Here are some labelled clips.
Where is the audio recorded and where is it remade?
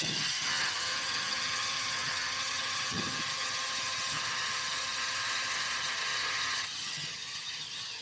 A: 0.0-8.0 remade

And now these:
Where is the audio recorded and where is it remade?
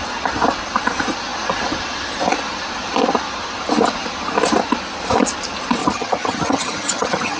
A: 0.0-5.8 recorded; 5.8-7.4 remade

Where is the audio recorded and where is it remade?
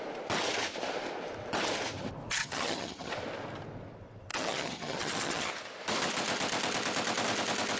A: 0.0-2.4 recorded; 2.4-3.1 remade; 3.1-4.3 recorded; 4.3-5.5 remade; 5.5-7.8 recorded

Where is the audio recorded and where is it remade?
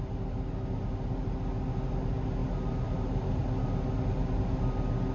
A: 0.0-5.1 recorded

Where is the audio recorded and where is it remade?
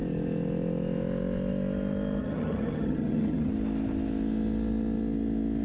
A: 0.0-2.2 recorded; 2.2-3.5 remade; 3.5-5.6 recorded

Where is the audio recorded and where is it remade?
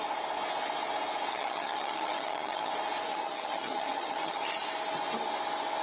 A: 0.0-1.3 recorded; 1.3-2.7 remade; 2.7-3.1 recorded; 3.1-4.6 remade; 4.6-5.8 recorded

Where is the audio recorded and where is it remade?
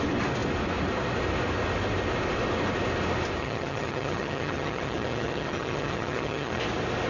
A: 0.0-3.4 recorded; 3.4-6.6 remade; 6.6-7.1 recorded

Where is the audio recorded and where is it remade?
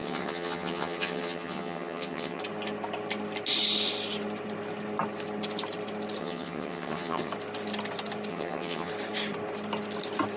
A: 0.0-2.4 remade; 2.4-6.2 recorded; 6.2-7.3 remade; 7.3-8.3 recorded; 8.3-8.9 remade; 8.9-10.4 recorded